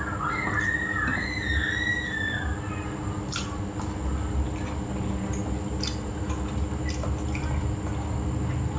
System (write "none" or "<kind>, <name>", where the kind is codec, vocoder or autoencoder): none